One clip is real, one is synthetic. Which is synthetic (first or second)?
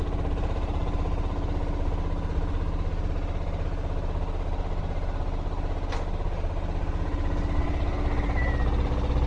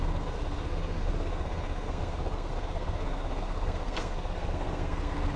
second